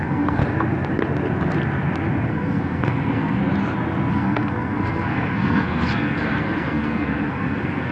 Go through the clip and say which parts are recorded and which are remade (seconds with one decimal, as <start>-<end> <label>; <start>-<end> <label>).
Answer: 0.0-0.4 remade; 0.4-2.3 recorded; 2.3-3.4 remade; 3.4-4.1 recorded; 4.1-7.9 remade